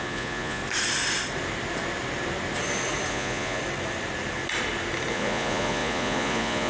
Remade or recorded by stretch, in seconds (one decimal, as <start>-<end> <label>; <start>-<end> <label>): 0.0-0.6 remade; 0.6-3.1 recorded; 3.1-3.6 remade; 3.6-5.1 recorded; 5.1-6.7 remade